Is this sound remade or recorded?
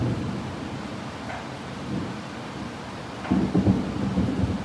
recorded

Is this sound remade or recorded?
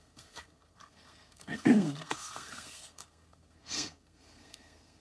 remade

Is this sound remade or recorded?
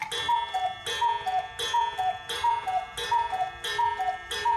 recorded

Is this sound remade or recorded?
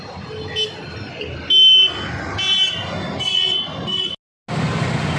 recorded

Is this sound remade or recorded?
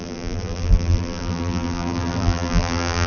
remade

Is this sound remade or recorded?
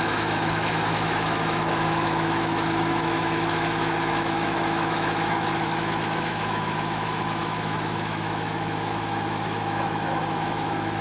remade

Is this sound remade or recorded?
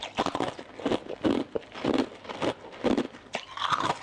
recorded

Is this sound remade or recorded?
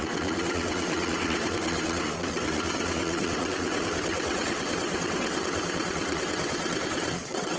remade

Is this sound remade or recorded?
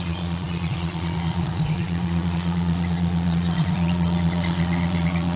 remade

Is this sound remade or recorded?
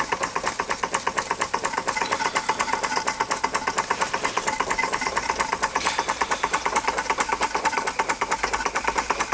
recorded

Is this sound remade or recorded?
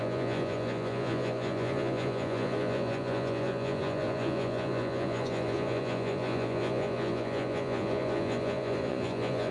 remade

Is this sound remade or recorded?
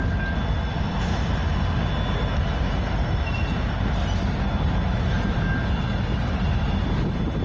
recorded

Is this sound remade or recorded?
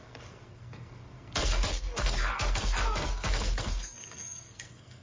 remade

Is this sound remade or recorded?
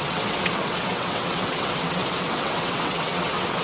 remade